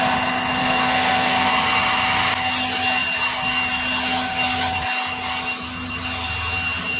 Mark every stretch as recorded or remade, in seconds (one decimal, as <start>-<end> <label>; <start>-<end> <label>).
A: 0.0-0.6 recorded; 0.6-1.5 remade; 1.5-7.0 recorded